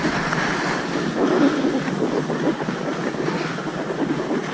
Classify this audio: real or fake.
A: real